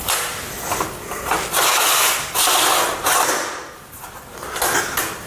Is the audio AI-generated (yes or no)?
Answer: no